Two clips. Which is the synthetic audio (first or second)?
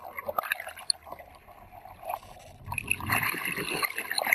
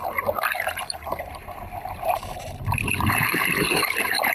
second